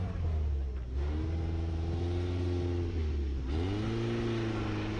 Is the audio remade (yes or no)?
no